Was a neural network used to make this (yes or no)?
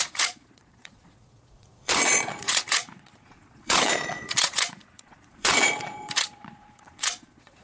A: yes